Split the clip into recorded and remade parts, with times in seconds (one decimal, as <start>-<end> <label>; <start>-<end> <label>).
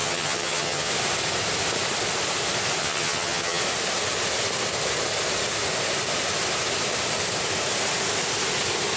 0.0-0.9 remade; 0.9-2.8 recorded; 2.8-3.6 remade; 3.6-9.0 recorded